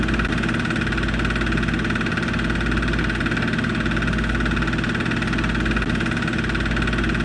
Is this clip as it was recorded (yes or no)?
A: yes